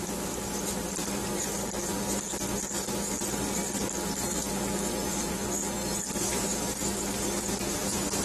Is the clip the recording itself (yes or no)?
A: yes